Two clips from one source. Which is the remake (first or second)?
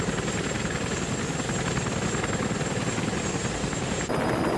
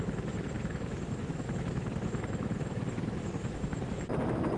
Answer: second